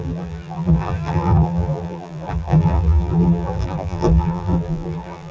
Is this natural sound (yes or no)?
no